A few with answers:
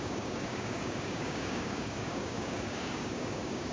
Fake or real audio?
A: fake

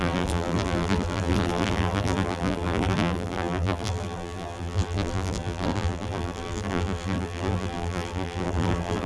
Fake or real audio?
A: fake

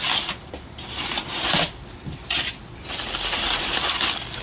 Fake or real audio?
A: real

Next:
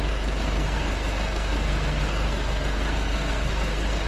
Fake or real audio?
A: fake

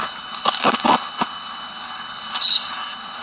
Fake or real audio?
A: fake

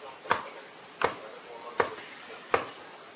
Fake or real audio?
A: real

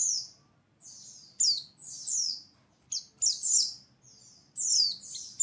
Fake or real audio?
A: real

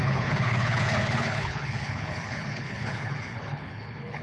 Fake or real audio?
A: fake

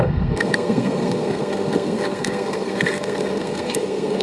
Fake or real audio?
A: fake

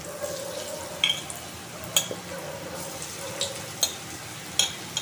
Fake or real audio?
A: real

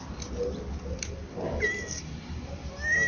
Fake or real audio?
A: real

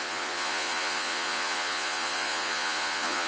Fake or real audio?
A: fake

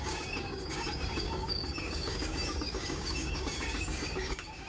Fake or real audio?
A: fake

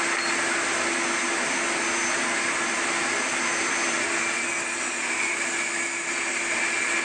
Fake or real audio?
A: real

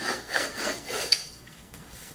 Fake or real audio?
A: fake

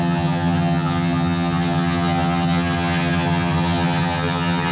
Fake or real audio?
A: fake